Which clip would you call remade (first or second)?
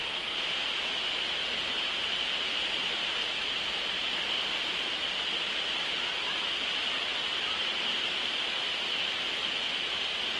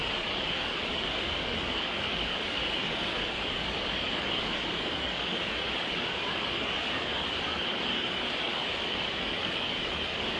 second